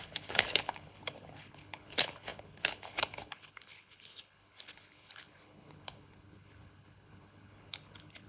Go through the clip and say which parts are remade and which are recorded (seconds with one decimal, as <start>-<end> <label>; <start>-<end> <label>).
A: 0.0-8.3 remade